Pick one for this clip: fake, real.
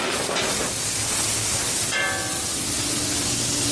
real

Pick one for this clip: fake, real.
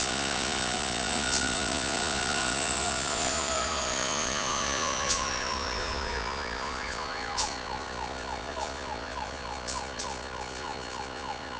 fake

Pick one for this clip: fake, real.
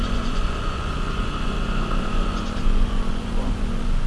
fake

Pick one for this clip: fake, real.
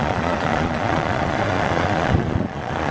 fake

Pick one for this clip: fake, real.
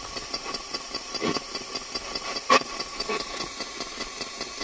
fake